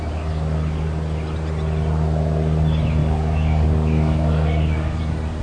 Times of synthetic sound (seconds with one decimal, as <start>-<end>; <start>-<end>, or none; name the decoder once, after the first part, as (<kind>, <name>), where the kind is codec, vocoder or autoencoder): 3.0-5.0 (codec, DAC)